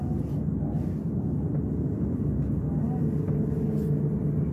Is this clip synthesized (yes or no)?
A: no